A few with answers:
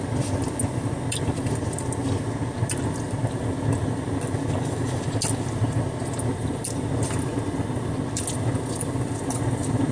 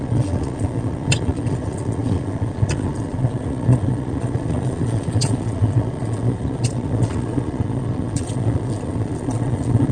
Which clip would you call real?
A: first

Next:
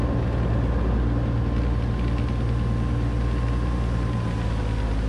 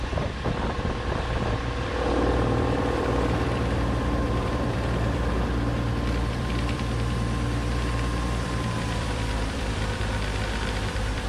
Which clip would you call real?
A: first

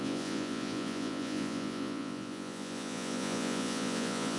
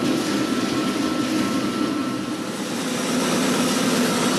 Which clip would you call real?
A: second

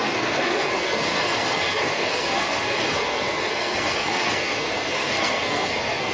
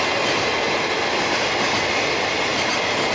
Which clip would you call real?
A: second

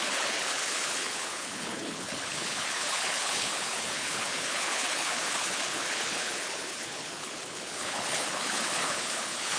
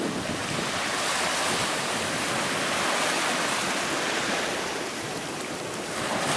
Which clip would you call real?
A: second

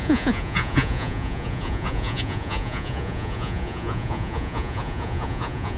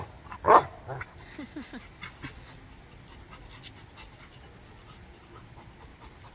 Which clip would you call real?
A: second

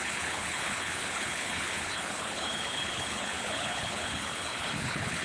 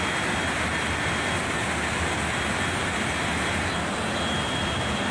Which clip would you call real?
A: second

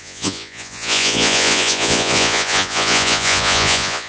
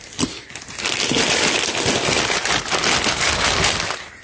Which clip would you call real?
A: second